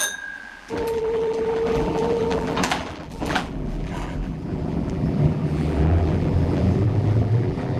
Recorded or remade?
remade